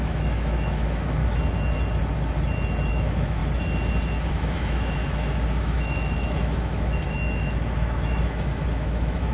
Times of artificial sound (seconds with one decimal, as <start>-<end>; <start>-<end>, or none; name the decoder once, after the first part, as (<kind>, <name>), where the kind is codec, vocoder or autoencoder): 0.0-1.2 (autoencoder, DAC-VAE); 2.9-3.4; 4.3-5.0; 5.6-9.3